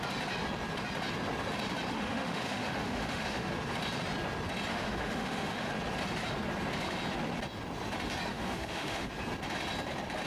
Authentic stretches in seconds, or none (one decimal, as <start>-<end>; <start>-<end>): 0.0-1.9; 3.5-4.7; 5.7-8.3; 9.1-10.3

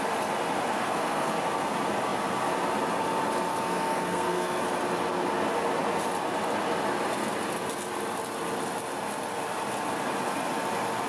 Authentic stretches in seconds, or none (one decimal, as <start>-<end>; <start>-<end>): 0.0-0.7; 1.3-3.5; 4.6-11.1